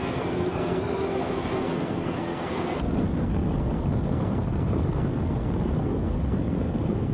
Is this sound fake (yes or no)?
yes